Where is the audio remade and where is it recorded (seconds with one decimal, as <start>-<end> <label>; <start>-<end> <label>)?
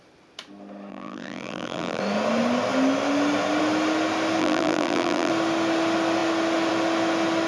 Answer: 0.0-0.9 recorded; 0.9-2.0 remade; 2.0-4.4 recorded; 4.4-5.3 remade; 5.3-7.5 recorded